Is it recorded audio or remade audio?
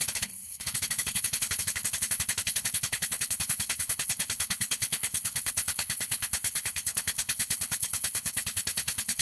remade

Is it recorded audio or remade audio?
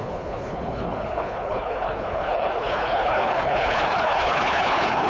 remade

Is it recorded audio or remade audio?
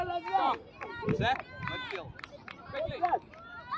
recorded